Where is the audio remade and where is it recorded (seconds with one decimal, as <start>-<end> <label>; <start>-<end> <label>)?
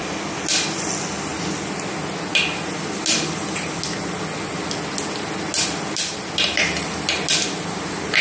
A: 0.0-8.2 recorded